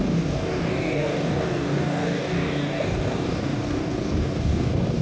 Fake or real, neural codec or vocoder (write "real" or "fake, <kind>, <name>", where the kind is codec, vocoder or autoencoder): fake, codec, DAC